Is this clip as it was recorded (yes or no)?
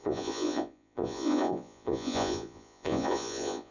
no